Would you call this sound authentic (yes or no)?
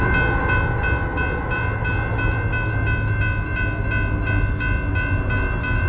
yes